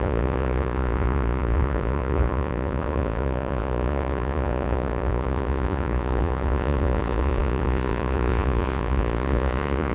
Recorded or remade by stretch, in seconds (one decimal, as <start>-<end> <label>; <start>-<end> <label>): 0.0-9.9 remade